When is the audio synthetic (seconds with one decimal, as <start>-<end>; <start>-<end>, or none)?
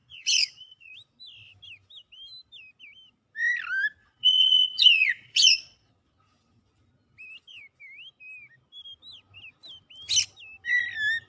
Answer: 0.0-0.9; 4.0-5.9